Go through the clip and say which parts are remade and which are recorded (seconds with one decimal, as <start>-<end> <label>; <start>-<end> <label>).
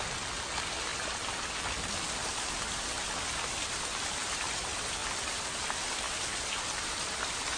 0.0-7.6 remade